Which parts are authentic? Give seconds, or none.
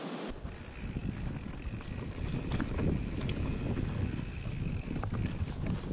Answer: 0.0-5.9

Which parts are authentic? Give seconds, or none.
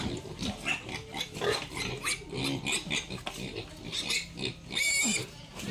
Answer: 0.0-5.7